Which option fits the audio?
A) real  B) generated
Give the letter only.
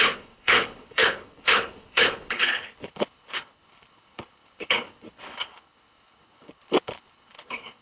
B